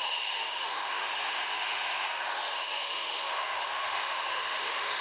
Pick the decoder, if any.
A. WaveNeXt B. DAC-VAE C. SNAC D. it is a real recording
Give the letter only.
B